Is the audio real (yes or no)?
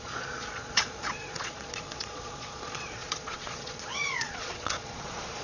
no